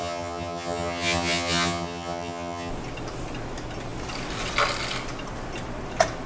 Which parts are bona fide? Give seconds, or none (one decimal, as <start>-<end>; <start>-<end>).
2.7-6.3